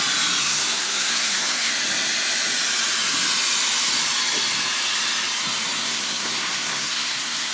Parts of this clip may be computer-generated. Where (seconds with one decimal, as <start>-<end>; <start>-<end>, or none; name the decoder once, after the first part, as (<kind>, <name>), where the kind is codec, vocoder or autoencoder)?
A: 0.4-1.7 (codec, SNAC); 5.8-7.5